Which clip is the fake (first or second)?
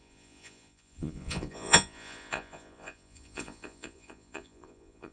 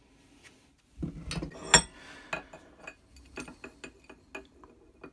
first